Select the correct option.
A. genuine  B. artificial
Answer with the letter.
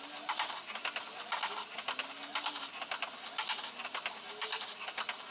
A